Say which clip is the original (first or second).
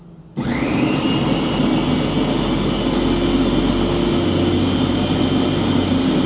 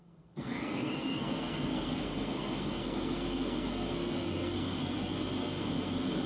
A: first